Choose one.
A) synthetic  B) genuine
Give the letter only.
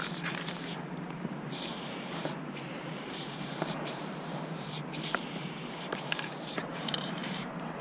A